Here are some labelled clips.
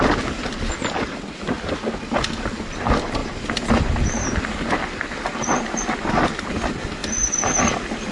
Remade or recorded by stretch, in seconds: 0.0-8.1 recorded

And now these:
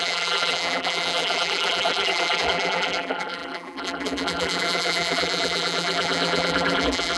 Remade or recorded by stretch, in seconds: 0.0-7.2 remade